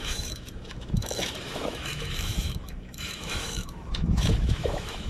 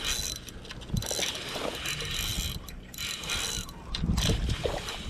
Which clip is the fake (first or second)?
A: first